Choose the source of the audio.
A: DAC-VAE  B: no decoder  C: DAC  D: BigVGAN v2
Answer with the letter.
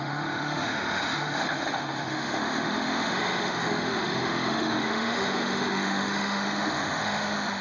A